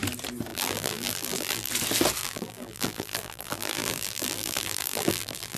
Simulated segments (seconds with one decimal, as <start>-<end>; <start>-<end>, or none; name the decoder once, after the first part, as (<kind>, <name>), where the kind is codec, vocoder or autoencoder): 0.5-1.7 (vocoder, BigVGAN v2); 2.2-5.6